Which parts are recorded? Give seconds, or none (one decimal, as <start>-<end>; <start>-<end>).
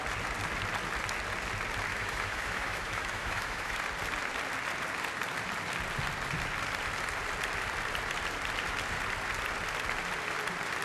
0.0-1.9; 3.8-10.8